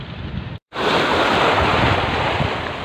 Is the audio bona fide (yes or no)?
no